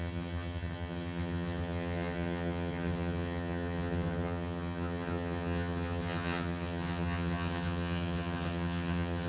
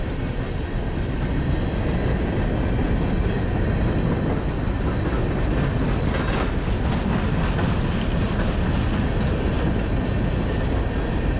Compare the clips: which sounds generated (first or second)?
first